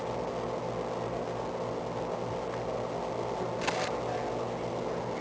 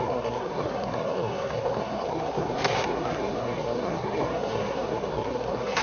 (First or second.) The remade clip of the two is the second